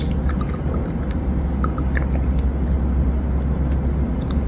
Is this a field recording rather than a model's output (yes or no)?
yes